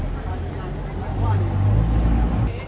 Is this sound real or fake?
real